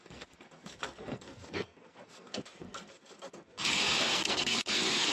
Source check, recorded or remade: remade